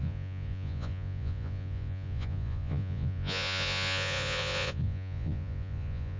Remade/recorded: remade